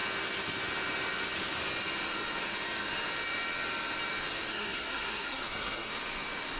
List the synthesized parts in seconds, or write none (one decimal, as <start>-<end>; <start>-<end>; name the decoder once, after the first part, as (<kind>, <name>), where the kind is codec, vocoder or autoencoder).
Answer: 4.5-5.9 (codec, SNAC)